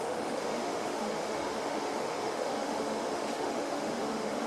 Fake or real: fake